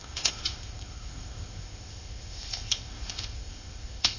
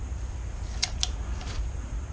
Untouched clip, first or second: second